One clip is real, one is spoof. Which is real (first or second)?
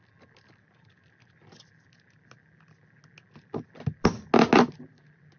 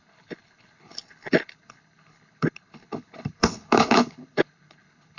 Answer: first